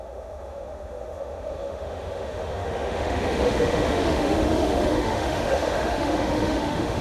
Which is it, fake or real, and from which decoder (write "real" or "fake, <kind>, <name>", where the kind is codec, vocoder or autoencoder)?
fake, autoencoder, DAC-VAE